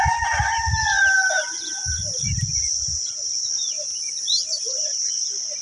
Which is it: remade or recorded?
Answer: recorded